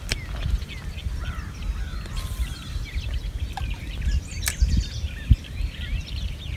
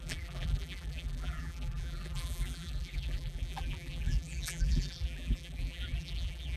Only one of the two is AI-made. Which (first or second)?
second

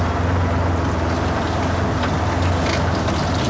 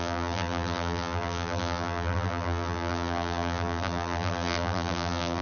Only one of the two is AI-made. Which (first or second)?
second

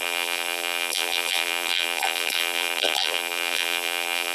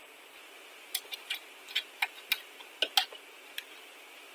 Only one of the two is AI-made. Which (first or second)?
first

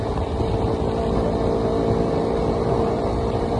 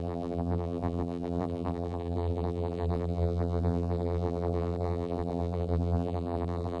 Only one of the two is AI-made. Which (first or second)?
second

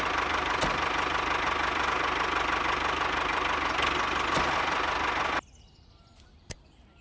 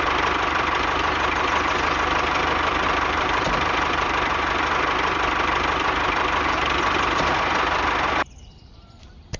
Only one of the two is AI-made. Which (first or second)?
second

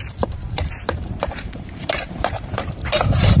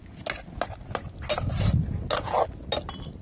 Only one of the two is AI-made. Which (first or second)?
first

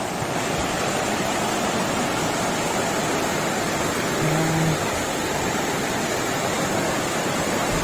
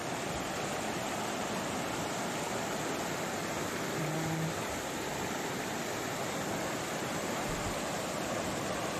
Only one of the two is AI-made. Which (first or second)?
second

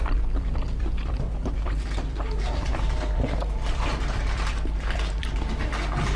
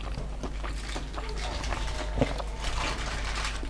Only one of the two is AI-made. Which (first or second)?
first